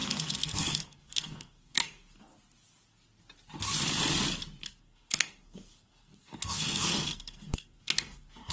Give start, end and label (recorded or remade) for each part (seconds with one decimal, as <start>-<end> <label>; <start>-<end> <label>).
0.0-2.3 remade; 2.3-4.8 recorded; 4.8-8.5 remade